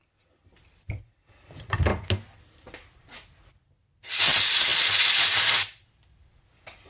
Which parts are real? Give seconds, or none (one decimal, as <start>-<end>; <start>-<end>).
1.9-2.4